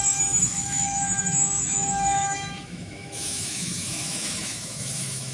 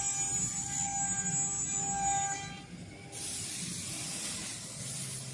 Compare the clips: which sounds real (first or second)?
second